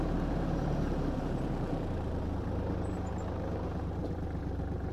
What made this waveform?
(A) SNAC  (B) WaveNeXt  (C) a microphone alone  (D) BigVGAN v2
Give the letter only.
D